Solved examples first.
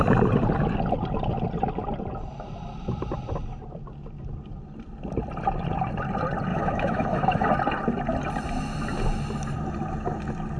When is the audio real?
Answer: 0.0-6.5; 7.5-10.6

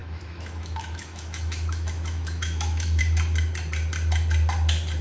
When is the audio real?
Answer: 3.0-5.0

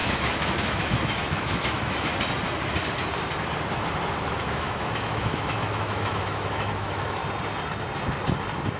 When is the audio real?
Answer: 2.1-4.2; 7.2-8.8

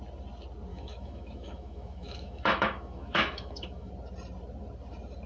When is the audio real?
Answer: 0.0-0.7; 3.9-5.3

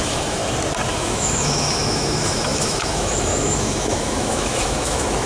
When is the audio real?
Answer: 0.4-0.9

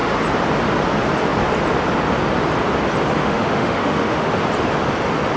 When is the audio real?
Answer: 0.0-3.2; 4.3-5.4

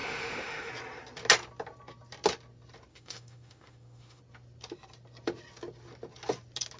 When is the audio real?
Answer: 0.7-2.9; 4.2-6.8

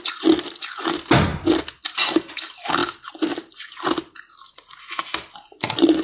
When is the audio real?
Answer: 0.0-6.0